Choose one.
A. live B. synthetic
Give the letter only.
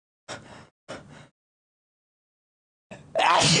A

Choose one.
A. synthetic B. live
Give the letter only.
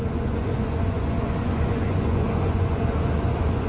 A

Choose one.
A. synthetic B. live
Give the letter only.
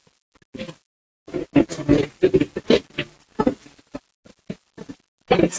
B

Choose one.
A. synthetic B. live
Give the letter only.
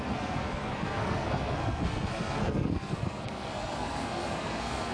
A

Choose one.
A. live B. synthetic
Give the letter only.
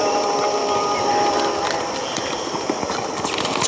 A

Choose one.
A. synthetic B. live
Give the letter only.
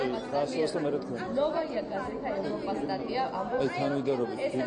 B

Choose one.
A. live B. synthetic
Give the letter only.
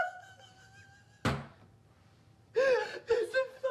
A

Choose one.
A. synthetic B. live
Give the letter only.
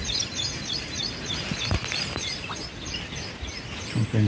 B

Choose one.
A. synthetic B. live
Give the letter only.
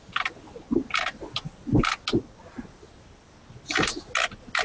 B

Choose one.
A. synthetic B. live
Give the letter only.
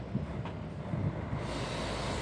B